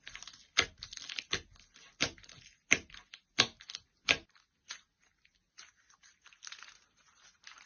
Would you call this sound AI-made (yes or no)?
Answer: no